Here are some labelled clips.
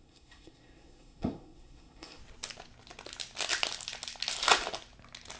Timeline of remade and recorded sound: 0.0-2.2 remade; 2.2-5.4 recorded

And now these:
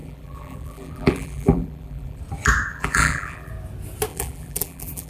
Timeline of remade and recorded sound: 0.0-2.2 remade; 2.2-2.7 recorded; 2.7-3.5 remade; 3.5-4.1 recorded; 4.1-5.1 remade

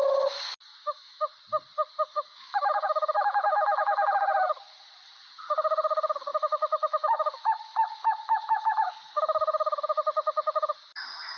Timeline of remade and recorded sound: 0.0-0.7 recorded; 0.7-1.2 remade; 1.2-2.1 recorded; 2.1-3.8 remade; 3.8-6.3 recorded; 6.3-9.2 remade; 9.2-11.4 recorded

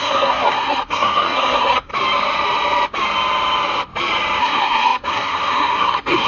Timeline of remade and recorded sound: 0.0-1.9 remade; 1.9-4.4 recorded; 4.4-6.3 remade

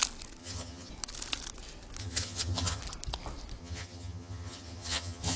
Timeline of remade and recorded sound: 0.0-0.4 recorded; 0.4-0.9 remade; 0.9-2.0 recorded; 2.0-2.8 remade; 2.8-3.6 recorded; 3.6-5.4 remade

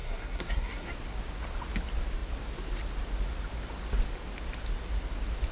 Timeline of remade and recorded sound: 0.0-0.9 remade; 0.9-5.5 recorded